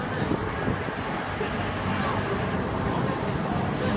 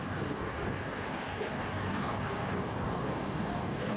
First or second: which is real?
first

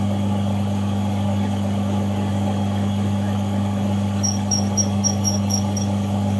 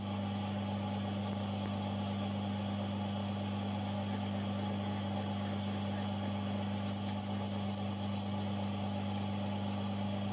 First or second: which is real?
second